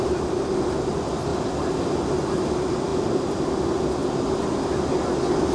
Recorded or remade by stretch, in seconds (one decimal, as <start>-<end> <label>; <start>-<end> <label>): 0.0-1.3 recorded; 1.3-1.9 remade; 1.9-2.9 recorded; 2.9-3.5 remade; 3.5-5.5 recorded